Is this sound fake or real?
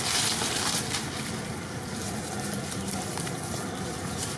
real